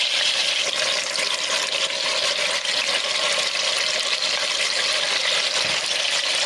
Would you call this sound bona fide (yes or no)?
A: yes